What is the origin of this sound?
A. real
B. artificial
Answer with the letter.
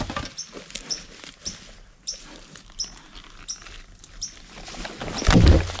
A